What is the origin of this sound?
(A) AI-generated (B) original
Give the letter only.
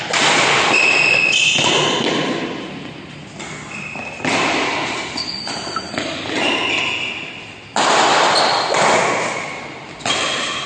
B